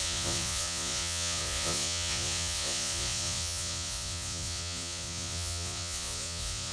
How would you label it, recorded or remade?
remade